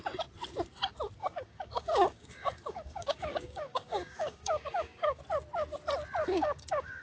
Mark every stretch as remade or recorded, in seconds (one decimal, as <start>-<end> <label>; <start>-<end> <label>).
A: 0.0-1.2 recorded; 1.2-5.2 remade; 5.2-6.2 recorded; 6.2-7.0 remade